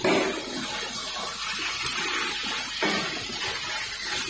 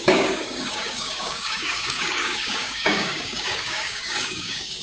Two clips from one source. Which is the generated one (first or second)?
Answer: second